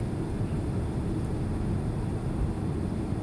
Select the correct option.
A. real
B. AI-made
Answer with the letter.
A